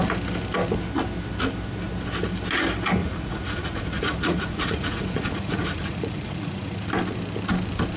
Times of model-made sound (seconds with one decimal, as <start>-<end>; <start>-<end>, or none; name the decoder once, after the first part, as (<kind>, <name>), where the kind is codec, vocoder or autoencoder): 3.0-6.8 (vocoder, Vocos)